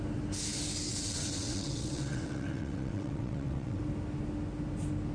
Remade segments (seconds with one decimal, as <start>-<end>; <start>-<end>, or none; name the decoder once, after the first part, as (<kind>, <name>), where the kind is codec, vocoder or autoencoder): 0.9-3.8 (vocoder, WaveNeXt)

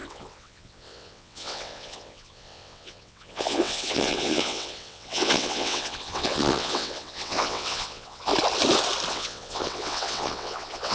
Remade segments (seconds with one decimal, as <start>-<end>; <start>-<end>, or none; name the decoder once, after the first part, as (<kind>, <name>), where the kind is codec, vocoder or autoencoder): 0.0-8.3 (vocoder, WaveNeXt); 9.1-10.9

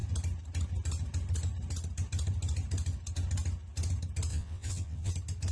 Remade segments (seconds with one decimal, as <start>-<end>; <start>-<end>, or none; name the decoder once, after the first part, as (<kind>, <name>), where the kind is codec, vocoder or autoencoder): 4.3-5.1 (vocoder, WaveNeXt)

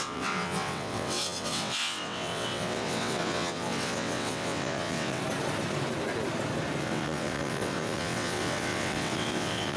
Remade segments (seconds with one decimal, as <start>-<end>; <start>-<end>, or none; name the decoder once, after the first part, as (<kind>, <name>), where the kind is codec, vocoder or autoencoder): 0.0-5.2 (vocoder, WaveNeXt); 6.8-9.8

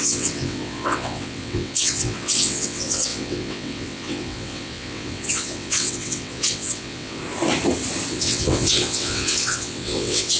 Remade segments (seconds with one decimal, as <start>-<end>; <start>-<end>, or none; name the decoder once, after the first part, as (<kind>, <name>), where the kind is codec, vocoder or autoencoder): 0.0-7.2 (vocoder, WaveNeXt); 8.1-10.4

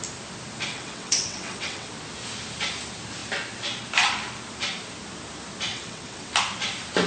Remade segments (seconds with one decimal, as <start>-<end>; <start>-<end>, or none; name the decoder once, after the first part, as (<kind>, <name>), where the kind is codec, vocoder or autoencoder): 0.7-1.9 (vocoder, WaveNeXt); 5.7-6.3